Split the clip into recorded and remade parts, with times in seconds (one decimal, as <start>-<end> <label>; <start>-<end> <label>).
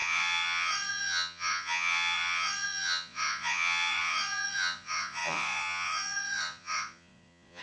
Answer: 0.0-7.6 remade